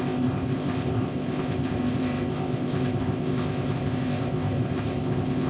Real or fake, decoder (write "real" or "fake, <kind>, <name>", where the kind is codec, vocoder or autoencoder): fake, codec, ZipCodec